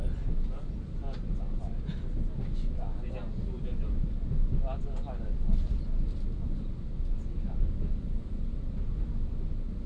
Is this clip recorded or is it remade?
recorded